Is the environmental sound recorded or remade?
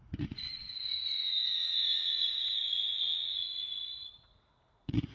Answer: remade